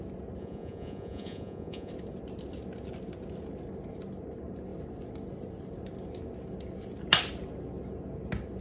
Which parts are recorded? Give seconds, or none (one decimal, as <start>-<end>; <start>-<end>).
0.0-0.4; 1.9-8.6